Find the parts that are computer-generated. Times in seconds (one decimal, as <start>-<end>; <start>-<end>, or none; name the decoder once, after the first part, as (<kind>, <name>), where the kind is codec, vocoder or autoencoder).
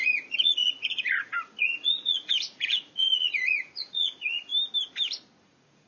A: 0.0-4.5 (vocoder, Vocos); 5.4-5.9